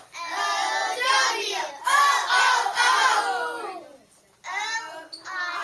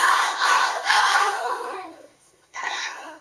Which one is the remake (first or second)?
second